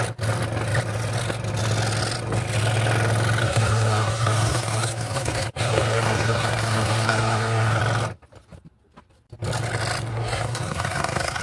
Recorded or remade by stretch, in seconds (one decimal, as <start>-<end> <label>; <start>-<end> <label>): 0.0-3.4 recorded; 3.4-7.8 remade; 7.8-10.1 recorded; 10.1-11.4 remade